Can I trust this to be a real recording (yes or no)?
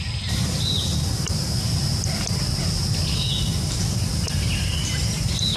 yes